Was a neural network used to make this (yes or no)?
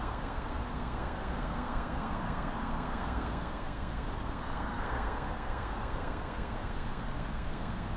yes